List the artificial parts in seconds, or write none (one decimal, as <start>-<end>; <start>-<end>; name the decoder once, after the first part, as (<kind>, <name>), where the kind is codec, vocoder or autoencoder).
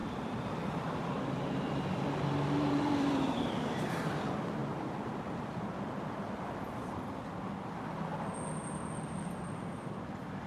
0.7-4.6 (vocoder, BigVGAN v2); 9.4-10.5